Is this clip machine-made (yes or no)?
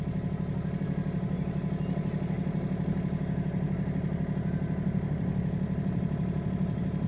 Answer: no